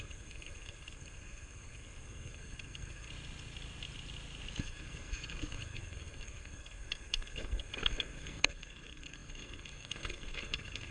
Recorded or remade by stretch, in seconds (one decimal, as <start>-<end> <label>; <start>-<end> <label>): 0.0-3.1 remade; 3.1-4.6 recorded; 4.6-10.9 remade